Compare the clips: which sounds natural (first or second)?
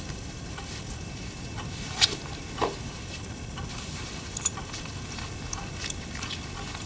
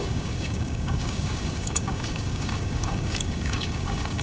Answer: first